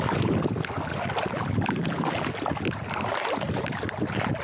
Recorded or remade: recorded